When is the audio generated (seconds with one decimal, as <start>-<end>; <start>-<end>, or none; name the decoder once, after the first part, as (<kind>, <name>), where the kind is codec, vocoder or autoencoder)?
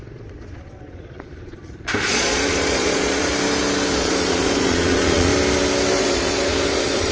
0.0-1.6 (vocoder, Vocos); 2.1-3.3; 3.9-5.3; 6.0-7.1